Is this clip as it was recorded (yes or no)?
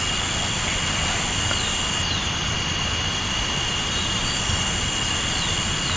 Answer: yes